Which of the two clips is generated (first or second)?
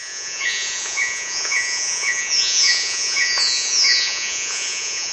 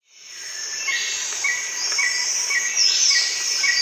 first